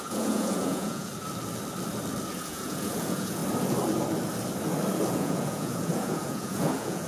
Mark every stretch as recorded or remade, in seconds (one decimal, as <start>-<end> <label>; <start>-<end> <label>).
0.0-1.1 remade; 1.1-2.3 recorded; 2.3-3.4 remade; 3.4-5.1 recorded; 5.1-7.1 remade